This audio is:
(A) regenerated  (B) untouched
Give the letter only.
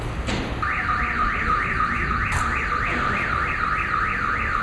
B